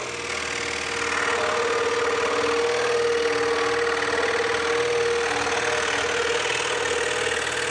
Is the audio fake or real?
real